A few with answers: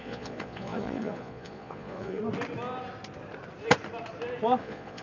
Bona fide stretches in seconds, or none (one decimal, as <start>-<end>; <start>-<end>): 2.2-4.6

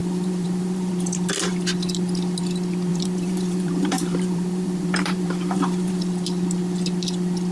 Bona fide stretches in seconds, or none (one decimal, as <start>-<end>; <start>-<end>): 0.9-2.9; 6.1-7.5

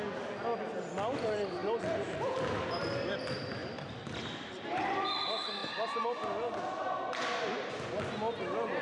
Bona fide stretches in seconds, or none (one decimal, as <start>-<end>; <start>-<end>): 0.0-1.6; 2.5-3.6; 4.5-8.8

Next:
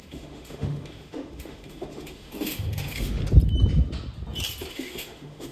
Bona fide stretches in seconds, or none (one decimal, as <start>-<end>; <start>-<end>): 3.2-4.7

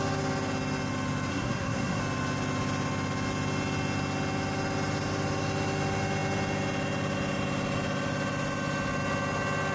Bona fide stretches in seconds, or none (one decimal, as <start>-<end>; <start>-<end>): 0.0-1.3; 2.0-9.7

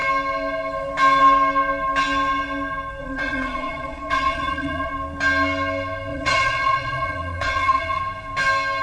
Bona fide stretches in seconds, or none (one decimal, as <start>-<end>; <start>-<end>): 0.0-3.0; 4.9-6.1; 8.0-8.8

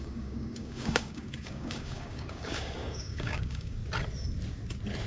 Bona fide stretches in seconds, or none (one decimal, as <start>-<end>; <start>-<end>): 3.8-5.1

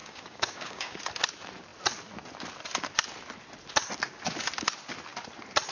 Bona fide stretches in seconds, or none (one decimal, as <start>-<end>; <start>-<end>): 1.0-5.7